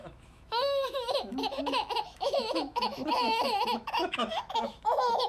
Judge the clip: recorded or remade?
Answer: remade